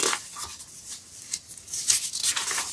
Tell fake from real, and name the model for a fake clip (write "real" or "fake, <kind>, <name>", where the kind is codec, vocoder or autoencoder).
real